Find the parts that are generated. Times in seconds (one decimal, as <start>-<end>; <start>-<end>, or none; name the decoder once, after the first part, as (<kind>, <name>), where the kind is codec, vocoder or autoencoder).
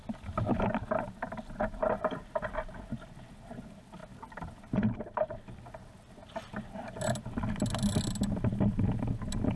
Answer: none